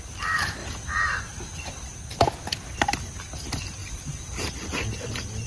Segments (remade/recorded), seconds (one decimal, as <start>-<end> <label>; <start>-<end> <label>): 0.0-5.5 recorded